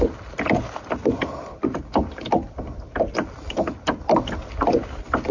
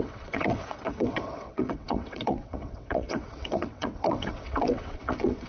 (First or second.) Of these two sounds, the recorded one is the first